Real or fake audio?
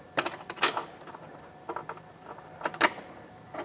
real